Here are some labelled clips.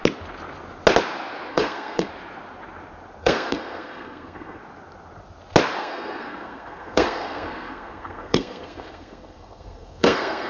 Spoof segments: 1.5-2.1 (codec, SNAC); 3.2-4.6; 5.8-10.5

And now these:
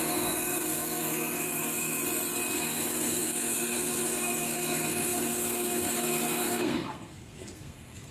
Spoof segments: 0.0-2.0 (codec, SNAC); 2.5-8.1